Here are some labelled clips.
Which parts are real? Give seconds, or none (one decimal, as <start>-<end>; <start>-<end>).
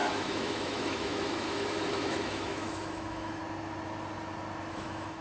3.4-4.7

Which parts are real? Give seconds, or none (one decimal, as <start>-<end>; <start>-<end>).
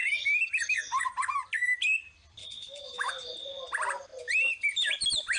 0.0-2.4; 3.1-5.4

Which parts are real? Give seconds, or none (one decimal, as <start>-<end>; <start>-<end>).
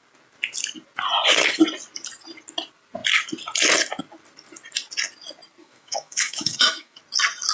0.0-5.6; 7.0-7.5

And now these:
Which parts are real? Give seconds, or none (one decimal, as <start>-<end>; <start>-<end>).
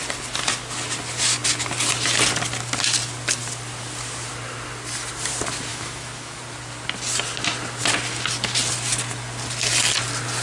0.0-5.7; 6.4-10.4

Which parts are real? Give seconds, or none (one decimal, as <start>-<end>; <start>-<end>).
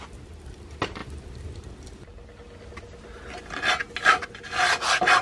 0.0-5.2